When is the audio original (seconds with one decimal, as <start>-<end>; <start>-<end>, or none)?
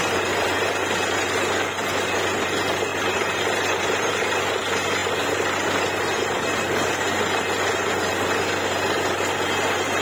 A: 0.0-2.9; 4.1-10.0